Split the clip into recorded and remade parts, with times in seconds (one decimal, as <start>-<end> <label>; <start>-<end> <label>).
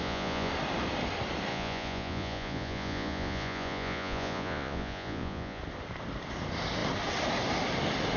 0.0-0.5 remade; 0.5-1.5 recorded; 1.5-5.6 remade; 5.6-8.2 recorded